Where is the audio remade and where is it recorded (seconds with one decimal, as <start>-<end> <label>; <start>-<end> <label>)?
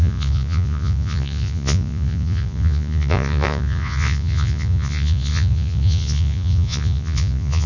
0.0-7.7 remade